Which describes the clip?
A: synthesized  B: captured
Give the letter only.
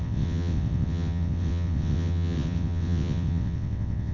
A